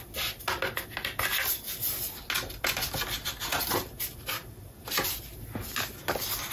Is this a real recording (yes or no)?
yes